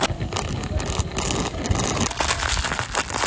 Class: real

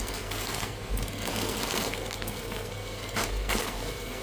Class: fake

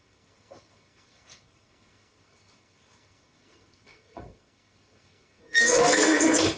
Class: fake